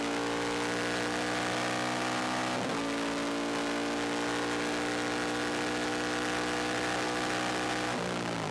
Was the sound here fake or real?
real